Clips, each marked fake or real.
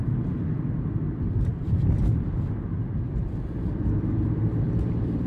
fake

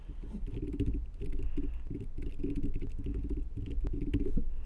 real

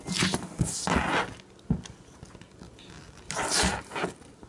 real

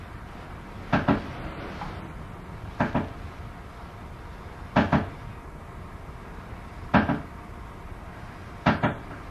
real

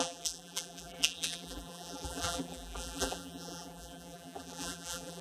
fake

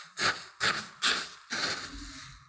real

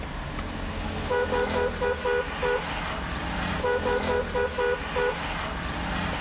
real